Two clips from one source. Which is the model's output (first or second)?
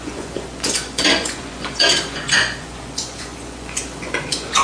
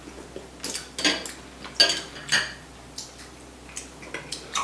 first